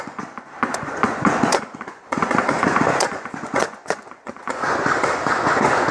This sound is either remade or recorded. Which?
remade